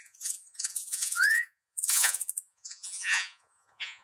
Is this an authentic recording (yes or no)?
no